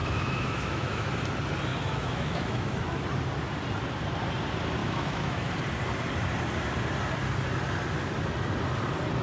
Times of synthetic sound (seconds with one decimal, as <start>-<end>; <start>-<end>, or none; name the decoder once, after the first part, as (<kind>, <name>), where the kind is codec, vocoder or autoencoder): 0.0-1.1 (autoencoder, DAC-VAE); 1.7-2.8; 4.8-5.5